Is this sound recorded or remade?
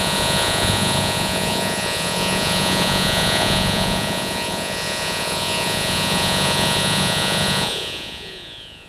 remade